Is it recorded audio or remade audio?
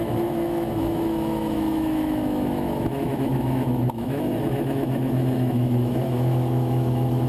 remade